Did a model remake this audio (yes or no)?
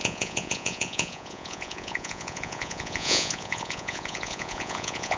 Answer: yes